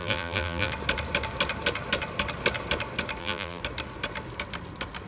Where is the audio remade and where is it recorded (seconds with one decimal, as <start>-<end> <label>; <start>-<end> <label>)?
0.0-0.7 remade; 0.7-3.2 recorded; 3.2-3.6 remade; 3.6-5.1 recorded